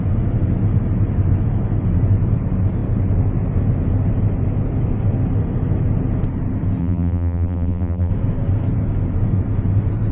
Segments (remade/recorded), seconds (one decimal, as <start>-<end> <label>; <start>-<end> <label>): 0.0-6.8 recorded; 6.8-8.1 remade; 8.1-10.1 recorded